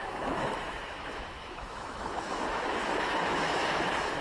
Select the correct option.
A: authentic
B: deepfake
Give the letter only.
B